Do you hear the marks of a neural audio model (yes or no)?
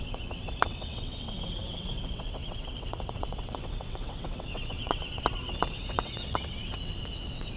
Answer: yes